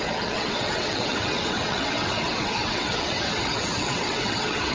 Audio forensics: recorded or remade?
remade